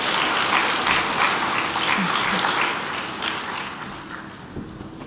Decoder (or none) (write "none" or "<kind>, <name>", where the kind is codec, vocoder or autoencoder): none